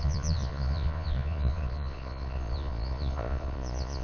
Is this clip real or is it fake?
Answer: fake